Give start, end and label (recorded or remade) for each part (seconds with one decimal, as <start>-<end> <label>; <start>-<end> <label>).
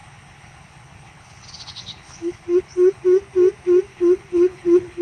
0.0-3.0 remade; 3.0-3.9 recorded; 3.9-5.0 remade